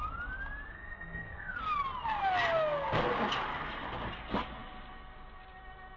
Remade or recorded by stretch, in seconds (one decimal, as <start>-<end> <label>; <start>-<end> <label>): 0.0-0.7 recorded; 0.7-1.6 remade; 1.6-6.0 recorded